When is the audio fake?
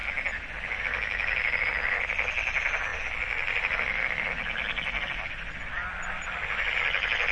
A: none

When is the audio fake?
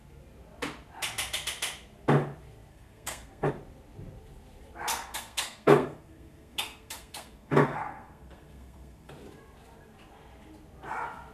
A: 2.7-3.5; 4.9-9.1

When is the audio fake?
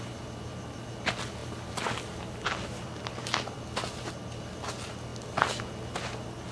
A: none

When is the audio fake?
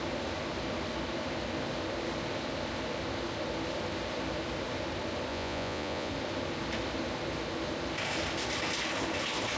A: 5.3-6.1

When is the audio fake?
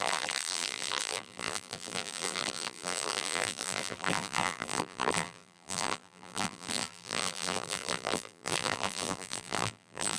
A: 0.0-10.2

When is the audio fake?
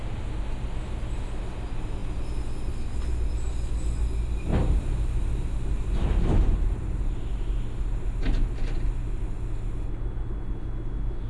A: 4.5-7.1